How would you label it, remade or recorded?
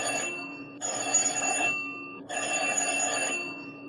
remade